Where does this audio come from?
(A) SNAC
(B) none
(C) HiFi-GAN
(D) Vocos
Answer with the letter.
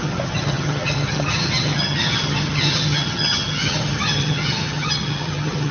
C